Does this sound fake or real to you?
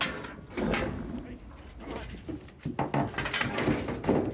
real